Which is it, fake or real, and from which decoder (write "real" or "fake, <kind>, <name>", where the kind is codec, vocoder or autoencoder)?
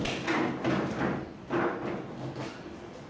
real